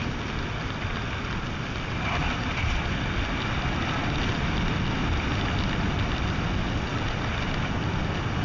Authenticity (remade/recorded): recorded